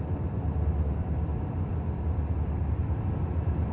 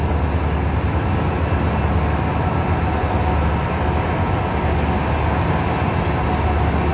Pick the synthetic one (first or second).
first